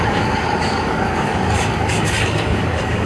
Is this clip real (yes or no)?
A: no